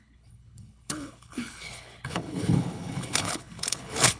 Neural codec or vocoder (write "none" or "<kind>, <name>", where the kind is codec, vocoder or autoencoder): codec, HILCodec